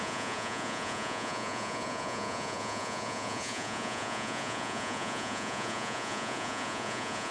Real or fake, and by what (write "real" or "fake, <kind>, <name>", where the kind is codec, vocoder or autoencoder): fake, vocoder, Vocos